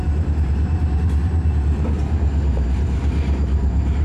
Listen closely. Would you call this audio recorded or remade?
remade